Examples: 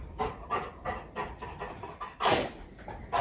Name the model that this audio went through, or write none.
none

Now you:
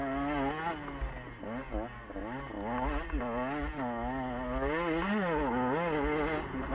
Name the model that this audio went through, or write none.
none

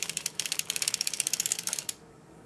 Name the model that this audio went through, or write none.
codec, DAC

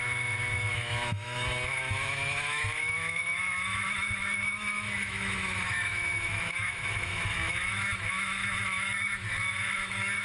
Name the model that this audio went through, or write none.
autoencoder, DAC-VAE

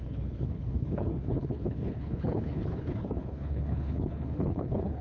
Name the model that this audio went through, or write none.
codec, HILCodec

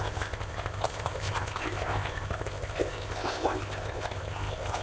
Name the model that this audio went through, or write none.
codec, ZipCodec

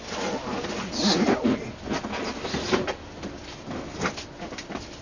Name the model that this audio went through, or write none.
none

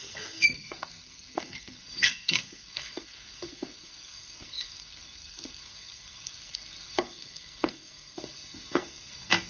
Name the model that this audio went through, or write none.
codec, SNAC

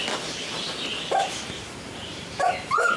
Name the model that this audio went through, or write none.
vocoder, BigVGAN v2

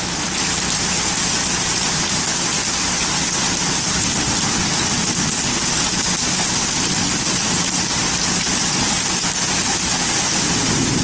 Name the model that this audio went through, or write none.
none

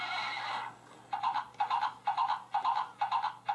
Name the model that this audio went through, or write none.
none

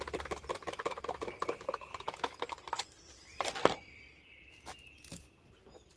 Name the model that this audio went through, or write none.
none